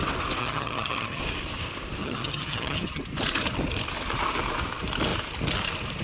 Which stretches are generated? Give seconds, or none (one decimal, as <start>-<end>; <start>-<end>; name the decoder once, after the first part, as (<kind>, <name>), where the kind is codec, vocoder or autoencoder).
0.4-1.2 (vocoder, HiFi-GAN); 2.0-3.0